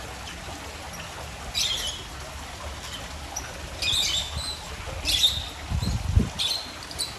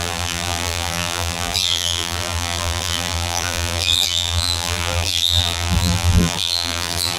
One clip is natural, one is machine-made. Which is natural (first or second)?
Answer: first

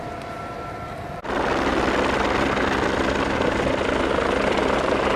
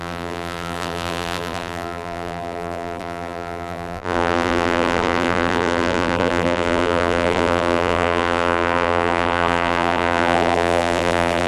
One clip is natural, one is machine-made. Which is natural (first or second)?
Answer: first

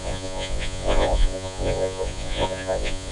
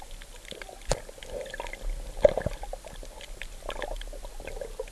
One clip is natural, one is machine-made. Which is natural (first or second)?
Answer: second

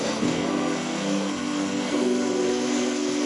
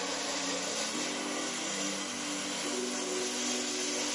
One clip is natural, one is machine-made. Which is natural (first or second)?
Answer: second